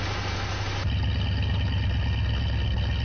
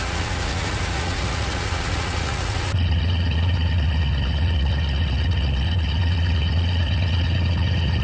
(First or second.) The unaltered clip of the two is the first